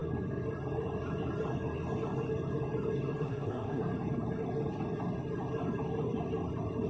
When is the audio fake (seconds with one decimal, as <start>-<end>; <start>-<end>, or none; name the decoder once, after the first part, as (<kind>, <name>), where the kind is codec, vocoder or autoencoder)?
3.2-3.8 (codec, SNAC)